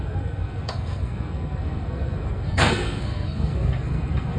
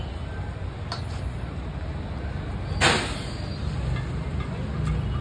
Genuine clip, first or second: second